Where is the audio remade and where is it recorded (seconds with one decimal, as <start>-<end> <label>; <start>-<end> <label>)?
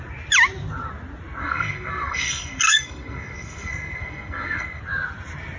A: 0.0-1.4 recorded; 1.4-4.8 remade; 4.8-5.6 recorded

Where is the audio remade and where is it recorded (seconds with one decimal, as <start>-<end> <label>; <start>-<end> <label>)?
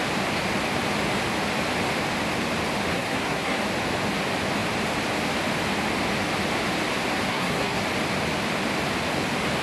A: 0.0-2.9 recorded; 2.9-3.6 remade; 3.6-7.3 recorded; 7.3-7.8 remade; 7.8-9.6 recorded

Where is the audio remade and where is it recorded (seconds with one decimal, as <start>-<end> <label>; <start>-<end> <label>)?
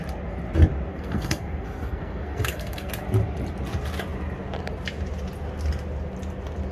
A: 0.0-0.9 recorded; 0.9-2.9 remade; 2.9-6.7 recorded